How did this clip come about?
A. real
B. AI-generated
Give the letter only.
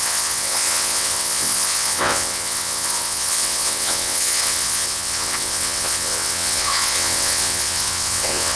B